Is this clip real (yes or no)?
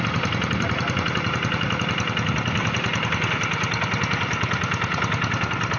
yes